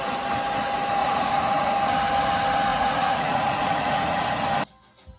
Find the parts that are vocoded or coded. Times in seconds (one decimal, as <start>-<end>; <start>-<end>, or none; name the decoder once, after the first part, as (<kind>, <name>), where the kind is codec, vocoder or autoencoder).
1.0-1.7 (vocoder, Vocos); 2.7-4.3